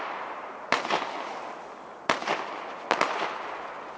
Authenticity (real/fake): real